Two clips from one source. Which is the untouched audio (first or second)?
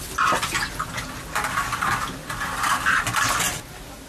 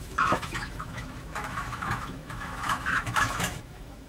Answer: first